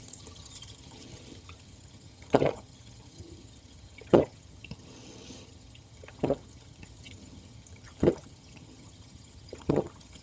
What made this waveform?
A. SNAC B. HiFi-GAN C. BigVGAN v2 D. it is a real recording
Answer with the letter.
B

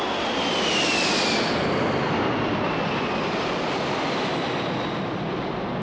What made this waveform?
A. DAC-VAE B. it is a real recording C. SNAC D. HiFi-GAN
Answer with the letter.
B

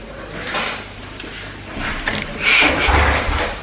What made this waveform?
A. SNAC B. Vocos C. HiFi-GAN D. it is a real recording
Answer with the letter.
D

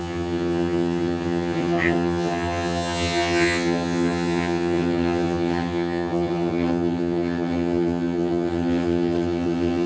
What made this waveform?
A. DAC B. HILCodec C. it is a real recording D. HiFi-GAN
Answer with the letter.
D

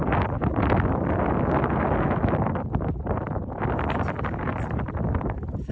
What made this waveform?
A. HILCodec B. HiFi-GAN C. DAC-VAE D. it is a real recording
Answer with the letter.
D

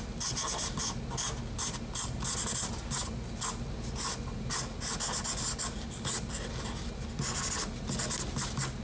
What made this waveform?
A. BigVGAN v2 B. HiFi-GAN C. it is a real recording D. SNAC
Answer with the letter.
C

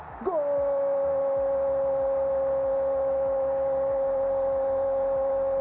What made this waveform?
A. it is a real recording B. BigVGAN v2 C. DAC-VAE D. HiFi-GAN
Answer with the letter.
A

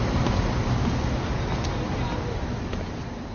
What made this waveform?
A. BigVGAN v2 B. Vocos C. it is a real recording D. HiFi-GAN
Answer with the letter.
C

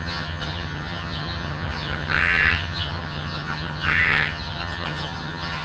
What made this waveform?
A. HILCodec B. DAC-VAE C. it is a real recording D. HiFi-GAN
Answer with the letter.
D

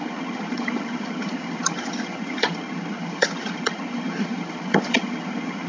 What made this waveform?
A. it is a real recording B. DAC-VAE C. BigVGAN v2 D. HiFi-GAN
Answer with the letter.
D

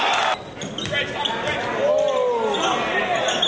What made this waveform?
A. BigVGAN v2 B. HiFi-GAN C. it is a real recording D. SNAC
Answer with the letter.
C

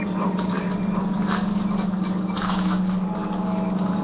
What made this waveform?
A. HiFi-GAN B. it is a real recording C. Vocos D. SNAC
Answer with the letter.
B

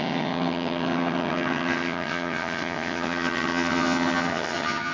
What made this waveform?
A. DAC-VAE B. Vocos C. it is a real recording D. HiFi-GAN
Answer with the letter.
D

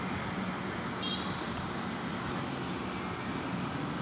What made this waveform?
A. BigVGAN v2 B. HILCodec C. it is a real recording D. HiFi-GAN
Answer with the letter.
C